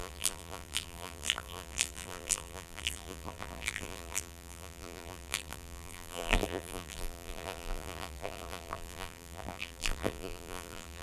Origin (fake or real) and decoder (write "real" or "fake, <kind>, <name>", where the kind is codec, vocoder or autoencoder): fake, vocoder, BigVGAN v2